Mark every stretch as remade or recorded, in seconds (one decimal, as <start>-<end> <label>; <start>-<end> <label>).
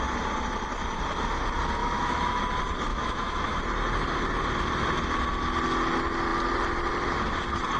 0.0-1.8 recorded; 1.8-2.4 remade; 2.4-2.9 recorded; 2.9-3.6 remade; 3.6-7.8 recorded